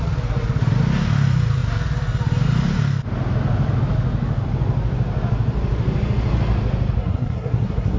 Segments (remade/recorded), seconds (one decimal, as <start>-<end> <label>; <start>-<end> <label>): 0.0-7.0 recorded; 7.0-8.0 remade